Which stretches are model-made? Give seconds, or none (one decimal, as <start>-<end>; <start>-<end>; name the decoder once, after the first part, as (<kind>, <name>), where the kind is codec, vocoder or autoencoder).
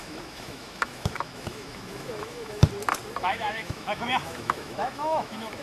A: 0.0-2.6 (autoencoder, DAC-VAE); 3.2-5.6